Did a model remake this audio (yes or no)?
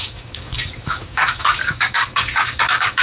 yes